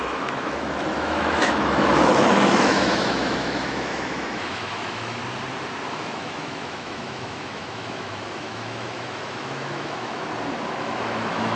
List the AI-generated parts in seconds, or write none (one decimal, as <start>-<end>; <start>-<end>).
0.0-5.2; 5.9-10.2; 10.8-11.6